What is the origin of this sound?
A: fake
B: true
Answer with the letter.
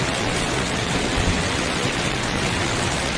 A